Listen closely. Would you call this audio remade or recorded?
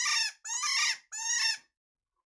recorded